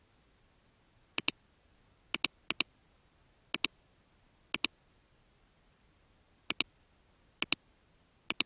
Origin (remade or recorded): recorded